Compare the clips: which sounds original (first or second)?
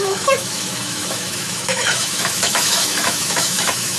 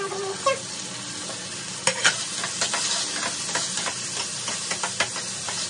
second